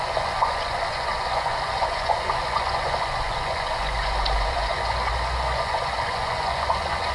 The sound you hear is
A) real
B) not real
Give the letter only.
B